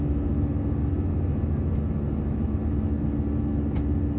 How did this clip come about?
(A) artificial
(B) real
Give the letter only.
B